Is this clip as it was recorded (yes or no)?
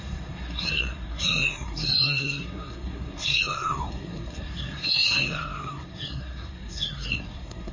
no